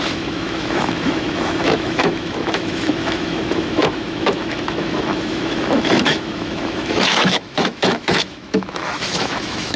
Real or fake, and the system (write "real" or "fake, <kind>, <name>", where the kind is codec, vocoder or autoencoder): fake, autoencoder, DAC-VAE